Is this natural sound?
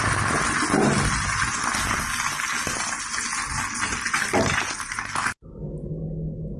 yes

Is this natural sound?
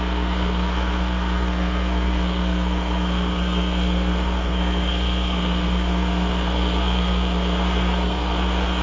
no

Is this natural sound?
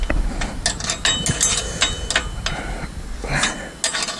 yes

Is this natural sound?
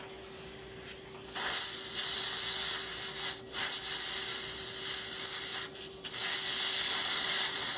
yes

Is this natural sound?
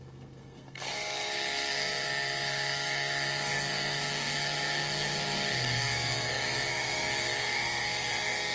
no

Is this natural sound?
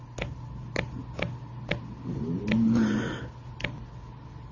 yes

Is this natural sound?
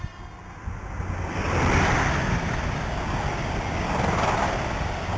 yes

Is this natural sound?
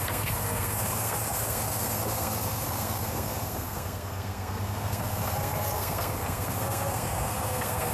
no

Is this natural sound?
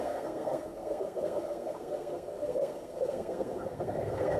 no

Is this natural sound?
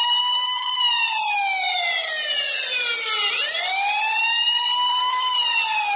yes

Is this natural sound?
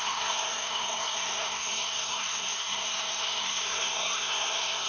no